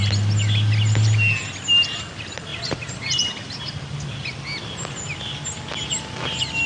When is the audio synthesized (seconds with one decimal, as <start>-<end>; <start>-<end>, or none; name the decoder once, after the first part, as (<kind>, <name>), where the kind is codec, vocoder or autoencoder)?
2.5-3.6 (vocoder, BigVGAN v2)